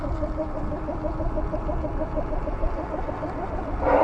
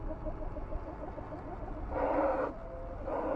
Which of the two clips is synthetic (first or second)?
first